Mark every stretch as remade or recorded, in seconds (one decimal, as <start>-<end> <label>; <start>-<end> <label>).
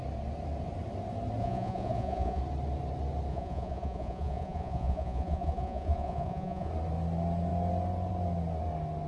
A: 0.0-1.4 recorded; 1.4-2.4 remade; 2.4-3.3 recorded; 3.3-6.7 remade; 6.7-9.1 recorded